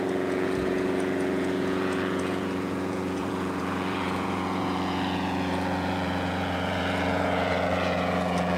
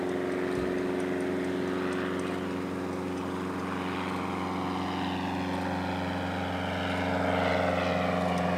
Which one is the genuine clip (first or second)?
second